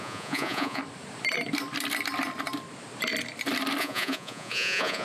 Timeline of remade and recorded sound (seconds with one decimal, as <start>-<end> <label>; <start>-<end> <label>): 0.0-0.8 remade; 0.8-3.8 recorded; 3.8-5.0 remade